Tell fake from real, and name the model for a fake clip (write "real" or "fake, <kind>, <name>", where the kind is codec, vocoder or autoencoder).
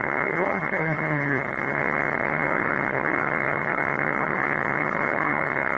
fake, vocoder, HiFi-GAN